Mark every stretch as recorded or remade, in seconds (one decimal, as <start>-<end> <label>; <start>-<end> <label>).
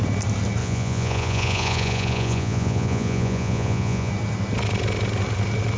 0.0-0.6 recorded; 0.6-4.1 remade; 4.1-5.8 recorded